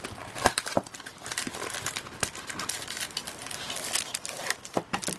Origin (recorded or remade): remade